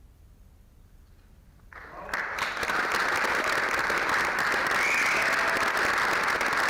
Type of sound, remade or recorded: recorded